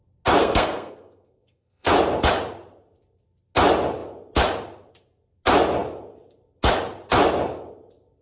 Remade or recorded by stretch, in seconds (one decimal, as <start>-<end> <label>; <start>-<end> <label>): 0.0-0.4 recorded; 0.4-1.9 remade; 1.9-8.2 recorded